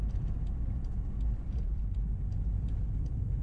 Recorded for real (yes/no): no